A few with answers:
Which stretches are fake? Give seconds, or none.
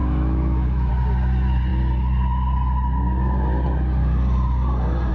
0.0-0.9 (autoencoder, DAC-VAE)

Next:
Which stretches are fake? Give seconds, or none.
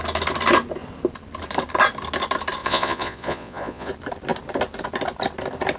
2.6-3.9 (vocoder, Vocos)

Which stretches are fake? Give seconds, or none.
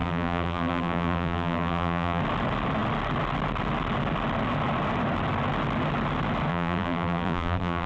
0.0-2.2 (vocoder, BigVGAN v2); 6.5-7.9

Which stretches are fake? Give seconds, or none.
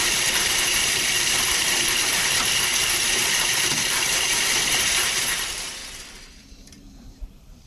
0.0-5.8 (vocoder, BigVGAN v2); 6.3-7.7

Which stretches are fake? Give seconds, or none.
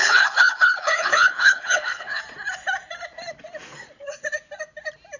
0.0-2.2 (codec, HILCodec)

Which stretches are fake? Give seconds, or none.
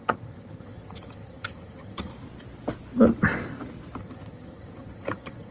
0.0-2.1 (vocoder, HiFi-GAN); 4.0-5.5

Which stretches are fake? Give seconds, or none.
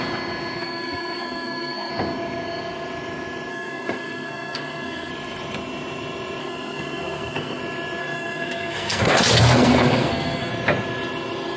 0.6-1.9 (codec, SNAC); 3.5-5.1; 6.4-7.6; 8.0-10.5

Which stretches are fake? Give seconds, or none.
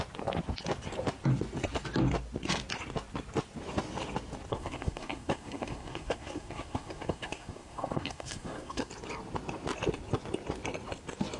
4.5-8.9 (codec, SNAC)